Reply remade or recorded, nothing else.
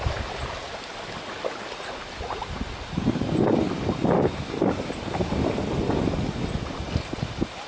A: recorded